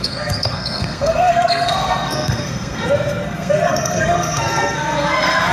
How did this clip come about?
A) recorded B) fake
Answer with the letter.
B